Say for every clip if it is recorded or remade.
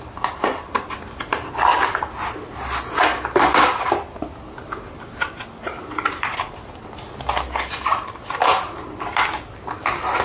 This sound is recorded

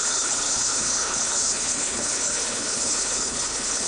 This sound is remade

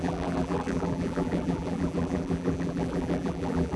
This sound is remade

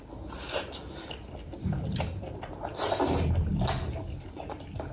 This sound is recorded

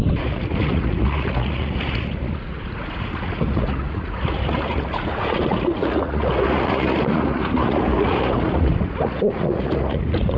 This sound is remade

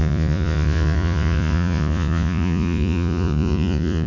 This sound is remade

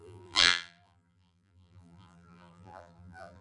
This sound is remade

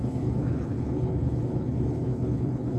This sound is remade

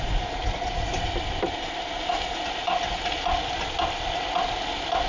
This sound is recorded